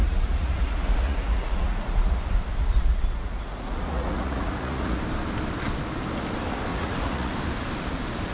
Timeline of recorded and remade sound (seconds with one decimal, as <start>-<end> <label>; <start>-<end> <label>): 0.0-2.2 remade; 2.2-2.6 recorded; 2.6-5.0 remade; 5.0-6.7 recorded; 6.7-7.3 remade; 7.3-8.3 recorded